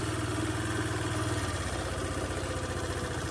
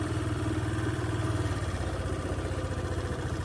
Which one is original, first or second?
first